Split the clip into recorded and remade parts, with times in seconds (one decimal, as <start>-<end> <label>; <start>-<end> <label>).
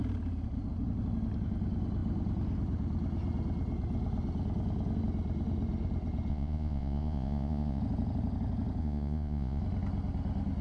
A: 0.0-6.3 recorded; 6.3-7.8 remade; 7.8-8.8 recorded; 8.8-9.6 remade; 9.6-10.6 recorded